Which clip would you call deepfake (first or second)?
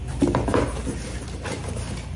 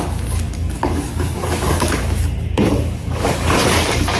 second